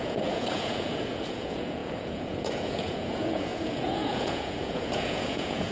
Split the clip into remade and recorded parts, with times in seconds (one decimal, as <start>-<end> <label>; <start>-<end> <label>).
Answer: 0.0-5.7 remade